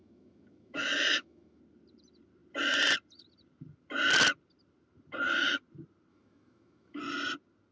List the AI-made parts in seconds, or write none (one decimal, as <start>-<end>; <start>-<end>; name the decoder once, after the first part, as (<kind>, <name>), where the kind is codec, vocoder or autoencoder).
0.0-1.6 (autoencoder, DAC-VAE); 6.1-7.0